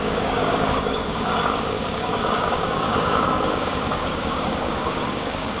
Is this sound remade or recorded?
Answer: remade